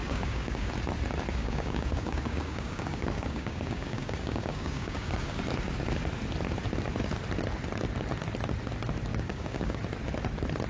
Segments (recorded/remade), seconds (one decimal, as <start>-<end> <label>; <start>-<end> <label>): 0.0-0.7 remade; 0.7-1.3 recorded; 1.3-5.4 remade; 5.4-9.1 recorded; 9.1-9.8 remade; 9.8-10.7 recorded